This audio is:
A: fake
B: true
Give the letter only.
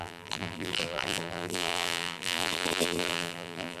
A